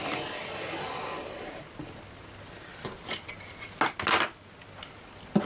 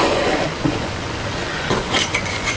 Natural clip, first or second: first